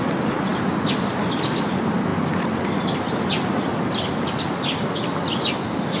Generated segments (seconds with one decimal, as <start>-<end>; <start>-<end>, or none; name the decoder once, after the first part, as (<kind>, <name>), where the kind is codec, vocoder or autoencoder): none